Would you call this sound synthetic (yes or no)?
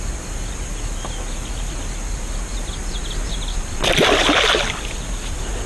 no